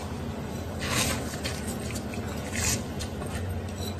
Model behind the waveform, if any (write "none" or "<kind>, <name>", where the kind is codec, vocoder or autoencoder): none